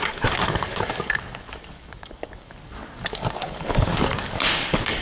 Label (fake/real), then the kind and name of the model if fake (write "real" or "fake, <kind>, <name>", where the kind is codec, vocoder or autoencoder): fake, codec, DAC